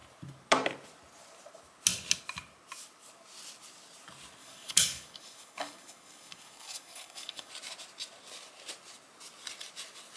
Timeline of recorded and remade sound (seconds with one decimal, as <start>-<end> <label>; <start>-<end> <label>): 0.0-4.4 recorded; 4.4-7.5 remade; 7.5-10.2 recorded

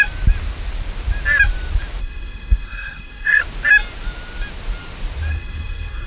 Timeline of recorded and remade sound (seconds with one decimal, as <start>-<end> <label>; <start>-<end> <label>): 0.0-2.0 recorded; 2.0-3.4 remade; 3.4-5.3 recorded; 5.3-6.1 remade

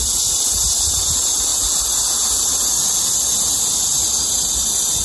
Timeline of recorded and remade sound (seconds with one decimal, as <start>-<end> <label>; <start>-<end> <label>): 0.0-5.0 recorded

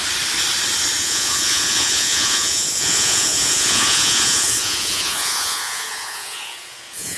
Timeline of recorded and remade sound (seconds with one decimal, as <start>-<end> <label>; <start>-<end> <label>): 0.0-1.0 recorded; 1.0-7.2 remade